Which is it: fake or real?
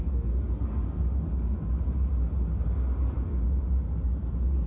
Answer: real